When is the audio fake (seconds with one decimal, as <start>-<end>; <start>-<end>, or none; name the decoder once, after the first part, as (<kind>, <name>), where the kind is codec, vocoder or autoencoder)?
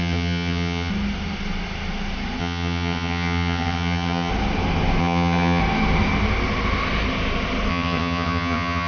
0.0-0.9 (vocoder, HiFi-GAN); 2.4-4.3; 5.0-5.6; 7.7-8.9